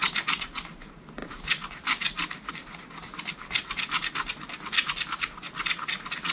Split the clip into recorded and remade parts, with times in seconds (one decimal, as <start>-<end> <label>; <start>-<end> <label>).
0.0-1.2 recorded; 1.2-2.5 remade; 2.5-6.3 recorded